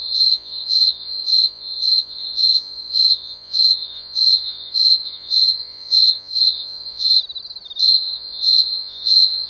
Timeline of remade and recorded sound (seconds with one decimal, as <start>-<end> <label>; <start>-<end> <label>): 0.0-7.2 remade; 7.2-7.8 recorded; 7.8-9.5 remade